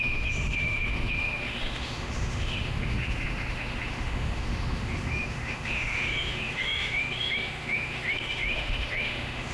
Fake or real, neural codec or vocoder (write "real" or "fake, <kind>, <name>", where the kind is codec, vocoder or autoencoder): fake, autoencoder, DAC-VAE